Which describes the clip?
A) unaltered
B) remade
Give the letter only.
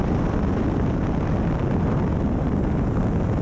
A